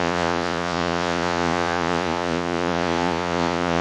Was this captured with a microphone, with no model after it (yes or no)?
no